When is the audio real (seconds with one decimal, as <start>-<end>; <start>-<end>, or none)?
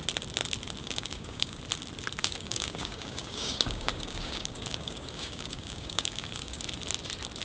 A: 0.0-0.8; 1.6-2.2; 6.6-7.4